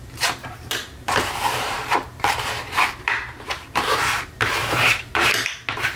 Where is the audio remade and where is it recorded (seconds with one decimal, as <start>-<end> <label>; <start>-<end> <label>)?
0.0-0.4 recorded; 0.4-4.0 remade; 4.0-4.6 recorded; 4.6-5.3 remade; 5.3-6.0 recorded